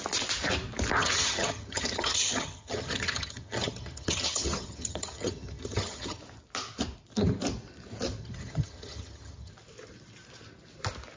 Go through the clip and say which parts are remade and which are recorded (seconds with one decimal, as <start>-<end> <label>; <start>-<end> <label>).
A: 0.0-1.0 recorded; 1.0-6.2 remade; 6.2-8.2 recorded; 8.2-9.5 remade; 9.5-11.2 recorded